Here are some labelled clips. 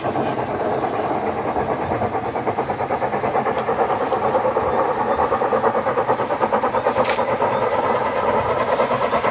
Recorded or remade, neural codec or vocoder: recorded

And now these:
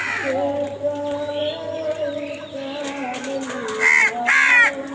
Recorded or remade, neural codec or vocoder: recorded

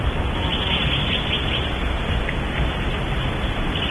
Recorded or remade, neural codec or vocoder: recorded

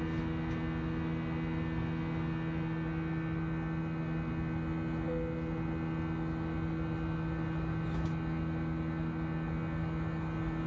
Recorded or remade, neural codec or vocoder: recorded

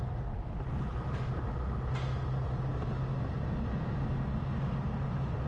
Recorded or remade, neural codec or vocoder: recorded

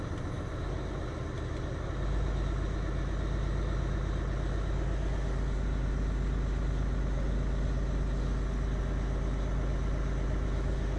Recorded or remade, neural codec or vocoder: recorded